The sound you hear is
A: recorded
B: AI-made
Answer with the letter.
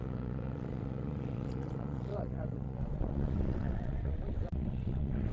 B